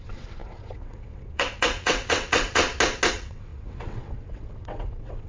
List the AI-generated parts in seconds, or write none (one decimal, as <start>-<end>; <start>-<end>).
0.0-2.6; 3.1-5.3

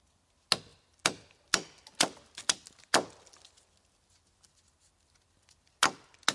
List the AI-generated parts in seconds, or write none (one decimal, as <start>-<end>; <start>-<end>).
none

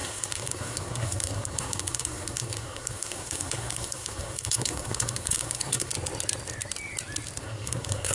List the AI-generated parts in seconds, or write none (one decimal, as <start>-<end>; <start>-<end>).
0.0-5.9; 7.4-8.1

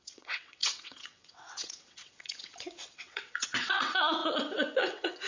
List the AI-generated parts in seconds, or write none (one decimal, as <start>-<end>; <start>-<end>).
0.0-5.3

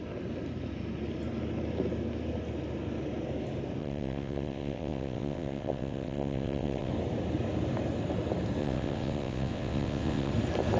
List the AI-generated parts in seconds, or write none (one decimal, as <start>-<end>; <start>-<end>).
3.8-6.9; 8.6-10.3